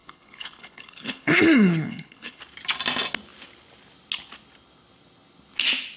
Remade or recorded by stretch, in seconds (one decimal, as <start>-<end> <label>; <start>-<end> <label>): 0.0-2.4 remade; 2.4-6.0 recorded